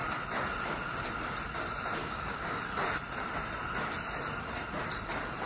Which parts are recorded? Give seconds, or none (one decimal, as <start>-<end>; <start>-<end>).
0.0-2.0; 2.6-5.5